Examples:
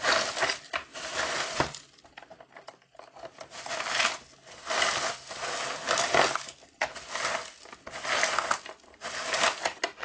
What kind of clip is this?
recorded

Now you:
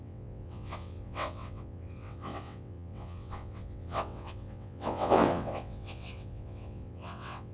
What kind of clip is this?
remade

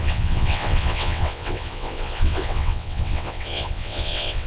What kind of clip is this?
remade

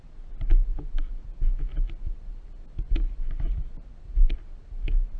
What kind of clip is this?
recorded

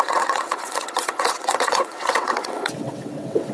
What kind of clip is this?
remade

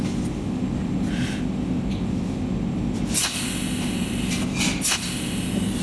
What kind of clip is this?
recorded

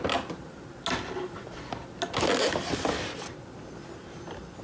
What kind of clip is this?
recorded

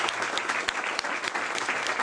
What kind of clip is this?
recorded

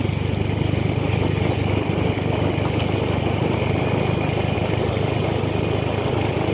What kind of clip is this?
recorded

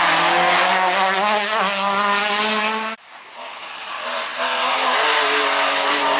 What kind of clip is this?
recorded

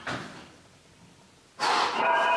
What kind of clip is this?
recorded